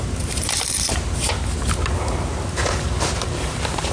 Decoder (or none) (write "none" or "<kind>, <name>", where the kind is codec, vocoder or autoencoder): vocoder, BigVGAN v2